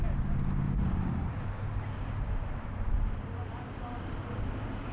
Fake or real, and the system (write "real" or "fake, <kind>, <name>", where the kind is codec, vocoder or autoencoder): real